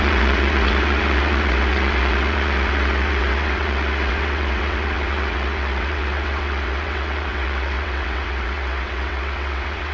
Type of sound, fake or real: fake